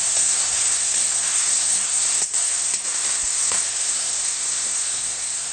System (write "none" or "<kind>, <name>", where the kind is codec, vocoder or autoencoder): codec, SNAC